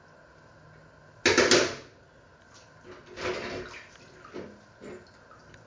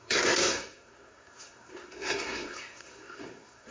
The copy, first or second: second